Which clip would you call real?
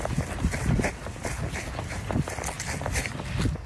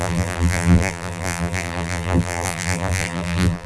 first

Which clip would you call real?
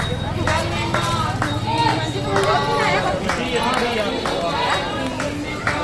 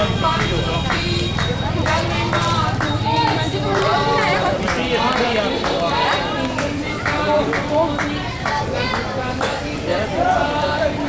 first